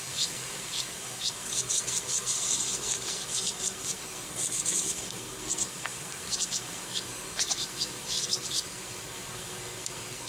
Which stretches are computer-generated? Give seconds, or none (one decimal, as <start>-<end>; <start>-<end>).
0.0-10.3